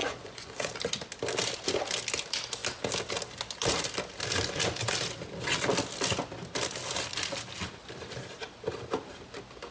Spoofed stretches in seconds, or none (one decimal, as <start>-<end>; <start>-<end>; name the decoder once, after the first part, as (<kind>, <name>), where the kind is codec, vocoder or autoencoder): 0.0-0.7 (vocoder, Vocos)